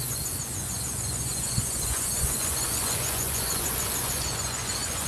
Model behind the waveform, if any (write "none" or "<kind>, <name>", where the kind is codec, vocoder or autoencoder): vocoder, Vocos